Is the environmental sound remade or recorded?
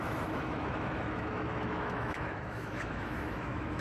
remade